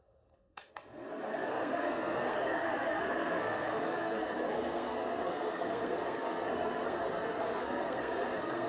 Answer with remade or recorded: remade